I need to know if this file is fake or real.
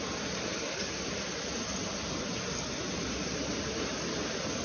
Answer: real